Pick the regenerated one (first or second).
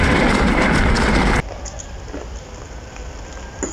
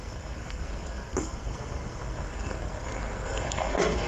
second